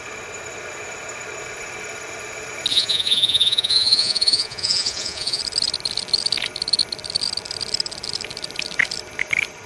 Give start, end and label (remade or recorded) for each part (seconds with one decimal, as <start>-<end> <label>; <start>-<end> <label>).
0.0-2.7 recorded; 2.7-5.4 remade; 5.4-9.7 recorded